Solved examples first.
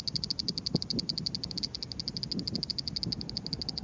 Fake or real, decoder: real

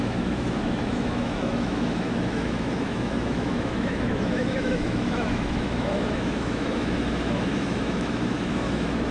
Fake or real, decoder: fake, autoencoder, DAC-VAE